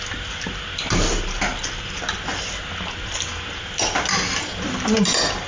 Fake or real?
real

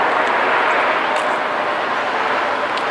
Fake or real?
real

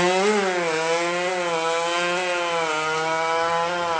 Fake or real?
real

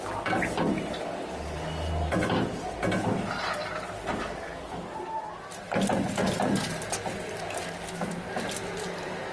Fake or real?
real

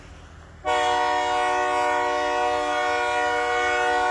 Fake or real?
real